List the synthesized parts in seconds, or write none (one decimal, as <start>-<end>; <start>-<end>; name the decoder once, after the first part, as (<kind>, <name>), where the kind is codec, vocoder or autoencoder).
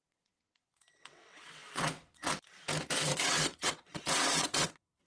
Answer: 0.0-2.3 (vocoder, WaveNeXt); 3.1-5.1